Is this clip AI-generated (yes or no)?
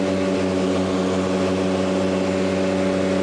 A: no